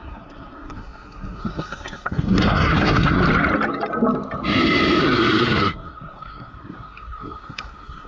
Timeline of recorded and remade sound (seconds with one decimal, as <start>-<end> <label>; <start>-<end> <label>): 0.0-3.2 remade; 3.2-5.0 recorded; 5.0-8.1 remade